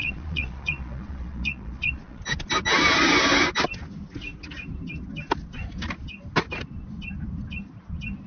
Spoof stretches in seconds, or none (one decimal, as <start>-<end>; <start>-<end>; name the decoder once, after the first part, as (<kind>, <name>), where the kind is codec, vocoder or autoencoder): 0.0-2.2 (vocoder, Vocos)